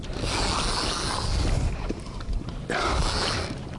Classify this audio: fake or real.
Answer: real